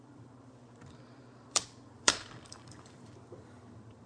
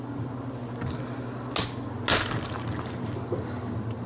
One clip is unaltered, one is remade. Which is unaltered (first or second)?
second